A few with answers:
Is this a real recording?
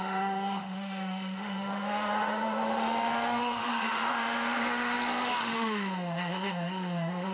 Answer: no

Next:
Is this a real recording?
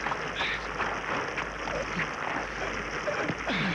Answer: yes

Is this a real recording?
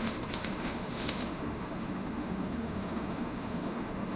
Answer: no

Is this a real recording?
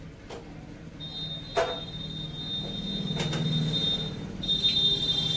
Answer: yes